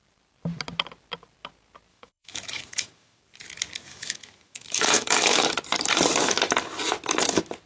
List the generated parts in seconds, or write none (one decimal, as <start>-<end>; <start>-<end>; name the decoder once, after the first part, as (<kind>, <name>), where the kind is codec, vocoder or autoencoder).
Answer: 1.9-3.2 (autoencoder, DAC-VAE); 3.9-5.5